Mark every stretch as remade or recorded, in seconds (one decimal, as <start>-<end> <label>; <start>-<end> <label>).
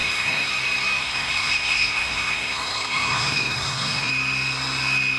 0.0-0.5 remade; 0.5-1.0 recorded; 1.0-4.1 remade; 4.1-5.2 recorded